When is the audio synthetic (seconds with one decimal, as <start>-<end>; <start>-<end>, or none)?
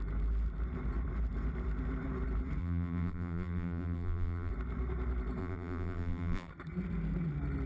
2.6-4.5; 5.4-6.5